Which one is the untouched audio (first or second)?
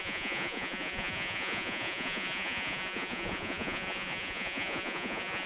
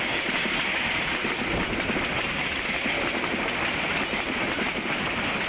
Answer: second